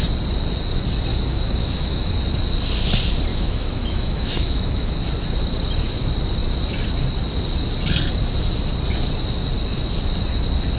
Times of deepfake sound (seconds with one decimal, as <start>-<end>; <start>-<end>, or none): 1.1-2.1; 3.3-4.9

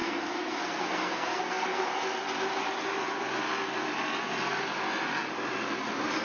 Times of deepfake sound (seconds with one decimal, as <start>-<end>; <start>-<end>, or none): 0.0-1.9

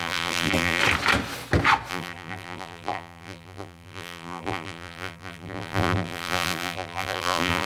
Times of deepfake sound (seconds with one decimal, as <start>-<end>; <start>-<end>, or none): 0.0-0.8; 1.9-7.7

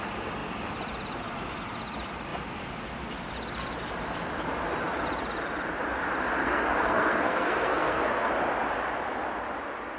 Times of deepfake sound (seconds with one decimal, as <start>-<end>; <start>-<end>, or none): 6.4-8.3

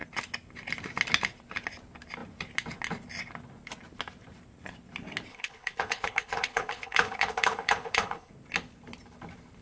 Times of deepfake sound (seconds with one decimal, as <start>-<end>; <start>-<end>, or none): 5.3-8.3

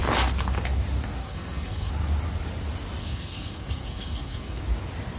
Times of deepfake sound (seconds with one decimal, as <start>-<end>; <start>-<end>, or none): 1.2-1.9; 3.0-4.6